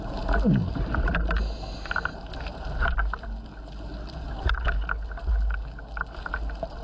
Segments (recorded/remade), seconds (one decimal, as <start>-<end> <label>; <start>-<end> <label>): 0.0-6.8 recorded